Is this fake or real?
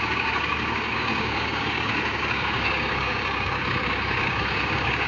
fake